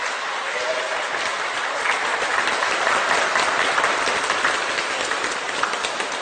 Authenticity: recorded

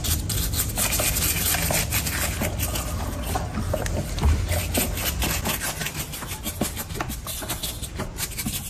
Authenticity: recorded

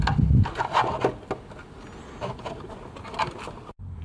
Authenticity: recorded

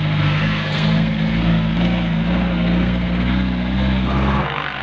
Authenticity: remade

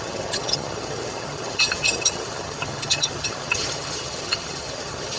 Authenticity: remade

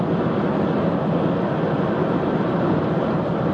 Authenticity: recorded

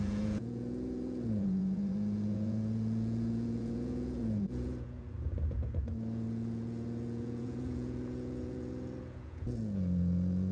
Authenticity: remade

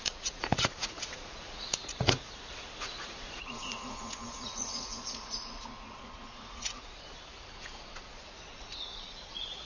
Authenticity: remade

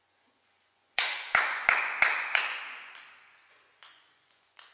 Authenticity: remade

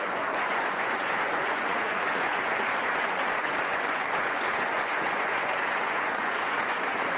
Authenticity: remade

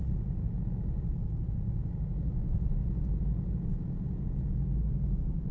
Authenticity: recorded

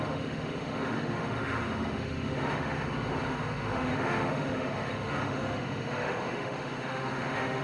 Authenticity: remade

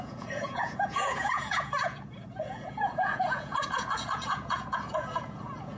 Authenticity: remade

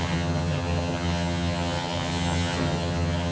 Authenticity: remade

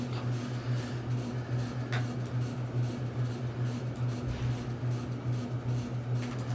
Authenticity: recorded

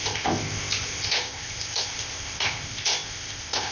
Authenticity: remade